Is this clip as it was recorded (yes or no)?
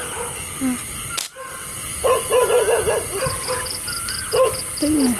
yes